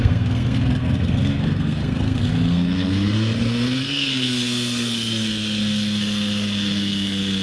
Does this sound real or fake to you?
fake